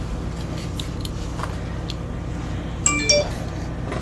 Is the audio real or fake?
real